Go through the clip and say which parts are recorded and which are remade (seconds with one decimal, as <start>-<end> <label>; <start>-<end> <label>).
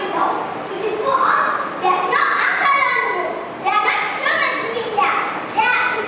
0.0-1.1 remade; 1.1-4.8 recorded; 4.8-6.1 remade